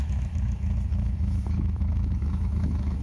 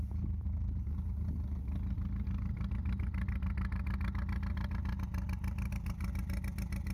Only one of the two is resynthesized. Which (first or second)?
first